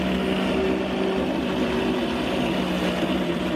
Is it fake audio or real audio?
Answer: real